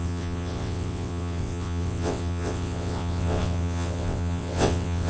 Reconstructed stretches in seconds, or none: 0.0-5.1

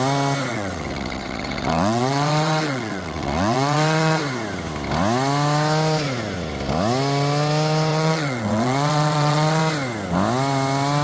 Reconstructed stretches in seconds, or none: 0.5-4.2; 7.9-9.6

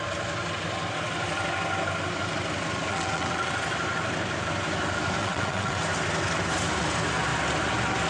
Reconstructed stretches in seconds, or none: 2.9-3.5; 5.2-5.8

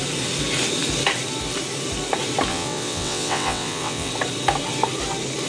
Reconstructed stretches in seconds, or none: 2.5-4.1

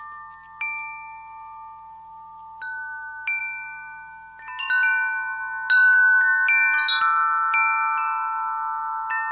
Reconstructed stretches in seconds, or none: none

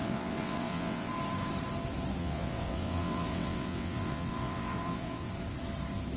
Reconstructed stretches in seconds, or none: 0.0-1.1; 2.2-5.3

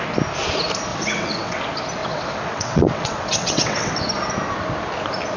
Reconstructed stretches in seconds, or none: 0.9-1.6; 2.0-4.0

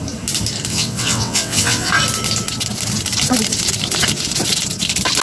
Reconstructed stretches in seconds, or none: 0.7-1.9